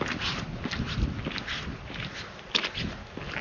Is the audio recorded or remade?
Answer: recorded